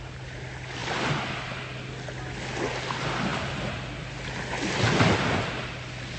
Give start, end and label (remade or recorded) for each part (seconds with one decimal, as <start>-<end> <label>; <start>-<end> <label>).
0.0-6.2 recorded